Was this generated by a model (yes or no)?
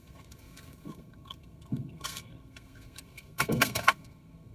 yes